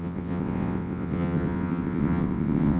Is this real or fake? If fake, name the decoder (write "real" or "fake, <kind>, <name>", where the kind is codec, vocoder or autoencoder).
fake, vocoder, WaveNeXt